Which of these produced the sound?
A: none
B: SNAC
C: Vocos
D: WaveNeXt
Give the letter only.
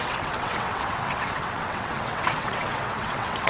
D